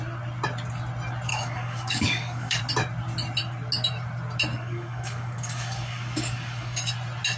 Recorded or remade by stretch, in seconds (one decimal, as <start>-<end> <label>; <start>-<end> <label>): 0.0-1.3 recorded; 1.3-2.6 remade; 2.6-4.5 recorded; 4.5-6.9 remade; 6.9-7.4 recorded